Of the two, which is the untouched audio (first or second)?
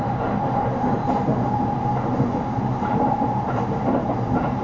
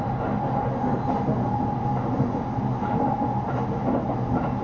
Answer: second